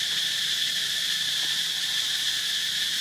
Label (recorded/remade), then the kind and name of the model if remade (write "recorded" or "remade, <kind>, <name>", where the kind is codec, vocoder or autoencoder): recorded